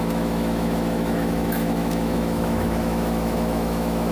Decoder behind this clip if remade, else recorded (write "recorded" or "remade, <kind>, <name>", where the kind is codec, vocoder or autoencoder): remade, autoencoder, DAC-VAE